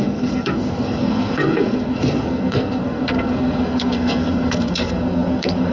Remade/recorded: remade